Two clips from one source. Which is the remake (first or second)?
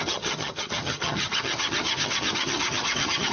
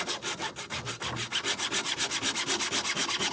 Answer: first